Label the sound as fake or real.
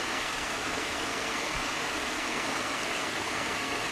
fake